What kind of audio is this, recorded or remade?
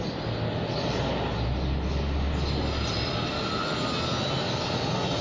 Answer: recorded